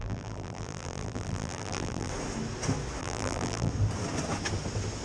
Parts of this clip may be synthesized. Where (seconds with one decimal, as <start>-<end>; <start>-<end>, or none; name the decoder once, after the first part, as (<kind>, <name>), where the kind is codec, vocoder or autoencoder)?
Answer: 0.0-2.1 (vocoder, BigVGAN v2); 3.0-3.7